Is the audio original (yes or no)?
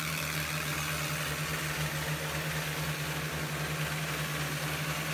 yes